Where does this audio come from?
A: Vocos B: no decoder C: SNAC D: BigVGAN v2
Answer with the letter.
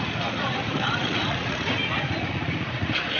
A